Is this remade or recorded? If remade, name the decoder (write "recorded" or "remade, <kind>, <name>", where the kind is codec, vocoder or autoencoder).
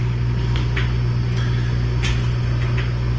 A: recorded